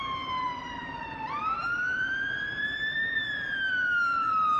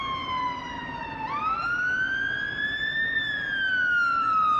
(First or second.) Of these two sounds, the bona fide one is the second